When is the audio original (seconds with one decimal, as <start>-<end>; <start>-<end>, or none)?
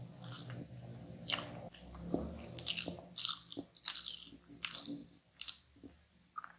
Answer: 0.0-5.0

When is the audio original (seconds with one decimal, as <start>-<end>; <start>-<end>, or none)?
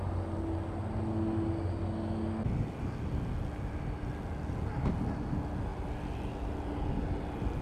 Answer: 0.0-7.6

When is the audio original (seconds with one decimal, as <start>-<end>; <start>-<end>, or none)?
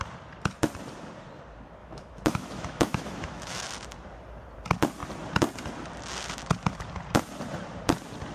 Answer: 0.0-1.8; 3.8-8.3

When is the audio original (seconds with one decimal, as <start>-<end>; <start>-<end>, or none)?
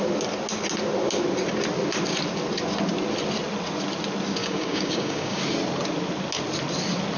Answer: 0.0-4.4; 5.4-7.2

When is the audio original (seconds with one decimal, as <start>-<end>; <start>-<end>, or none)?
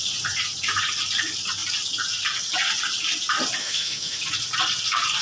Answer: 0.0-3.6; 4.2-5.2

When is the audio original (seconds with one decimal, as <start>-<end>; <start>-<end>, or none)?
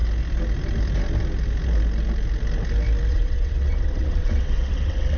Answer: 0.0-3.1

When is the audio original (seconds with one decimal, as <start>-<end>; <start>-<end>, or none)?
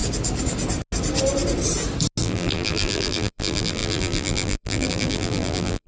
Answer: 0.0-2.2